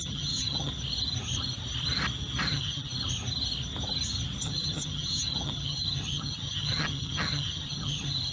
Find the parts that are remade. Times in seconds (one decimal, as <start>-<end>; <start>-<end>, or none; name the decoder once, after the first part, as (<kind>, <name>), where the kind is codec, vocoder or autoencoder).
0.0-0.7 (vocoder, HiFi-GAN); 2.5-2.9; 4.4-8.3